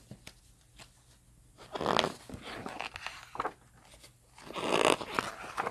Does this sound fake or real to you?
real